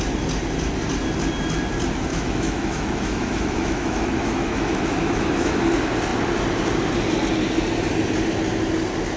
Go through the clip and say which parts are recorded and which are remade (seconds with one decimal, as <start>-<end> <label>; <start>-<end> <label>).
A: 0.0-2.1 recorded; 2.1-5.6 remade; 5.6-9.2 recorded